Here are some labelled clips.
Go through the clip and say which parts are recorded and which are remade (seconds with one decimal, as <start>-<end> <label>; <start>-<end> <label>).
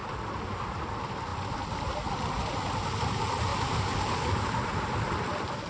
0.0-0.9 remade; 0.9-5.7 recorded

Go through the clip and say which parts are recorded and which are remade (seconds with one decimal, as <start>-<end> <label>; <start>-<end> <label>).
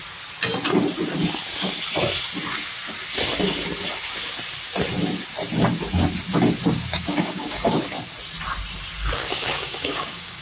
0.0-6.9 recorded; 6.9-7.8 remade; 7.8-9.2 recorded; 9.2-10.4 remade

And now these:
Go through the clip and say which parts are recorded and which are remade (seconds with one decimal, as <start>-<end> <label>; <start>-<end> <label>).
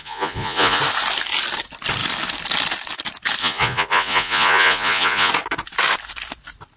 0.0-0.8 remade; 0.8-3.4 recorded; 3.4-5.3 remade; 5.3-6.8 recorded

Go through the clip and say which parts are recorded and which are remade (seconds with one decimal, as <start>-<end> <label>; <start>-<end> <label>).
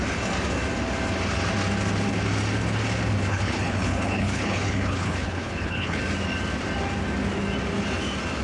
0.0-3.3 recorded; 3.3-6.0 remade; 6.0-8.4 recorded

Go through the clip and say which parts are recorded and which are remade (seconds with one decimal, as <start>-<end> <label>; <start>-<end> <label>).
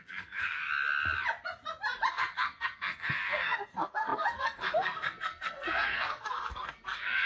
0.0-0.6 remade; 0.6-2.1 recorded; 2.1-7.3 remade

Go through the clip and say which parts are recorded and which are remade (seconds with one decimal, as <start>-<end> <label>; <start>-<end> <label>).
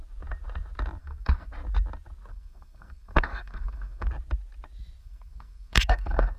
0.0-1.0 recorded; 1.0-1.5 remade; 1.5-2.3 recorded; 2.3-4.1 remade; 4.1-5.0 recorded; 5.0-6.4 remade